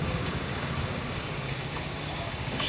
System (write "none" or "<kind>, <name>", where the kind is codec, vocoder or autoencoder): codec, DAC